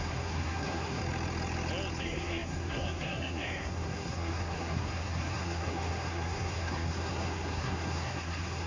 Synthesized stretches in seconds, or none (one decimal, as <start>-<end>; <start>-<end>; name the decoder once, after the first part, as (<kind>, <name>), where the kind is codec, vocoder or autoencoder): 0.0-1.0 (codec, SNAC); 2.0-8.7